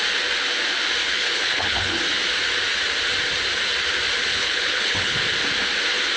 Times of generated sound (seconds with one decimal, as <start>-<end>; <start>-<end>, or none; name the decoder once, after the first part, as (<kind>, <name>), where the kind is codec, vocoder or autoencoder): 1.0-2.0 (codec, HILCodec); 4.3-5.2